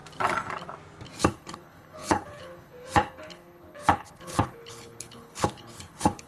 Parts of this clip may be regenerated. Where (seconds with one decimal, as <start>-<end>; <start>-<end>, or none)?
1.2-6.3